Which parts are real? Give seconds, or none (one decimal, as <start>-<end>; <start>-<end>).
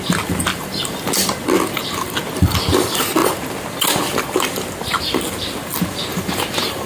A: 0.0-0.5; 1.1-6.1